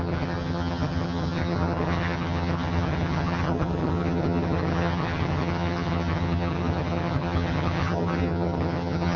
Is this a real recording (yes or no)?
no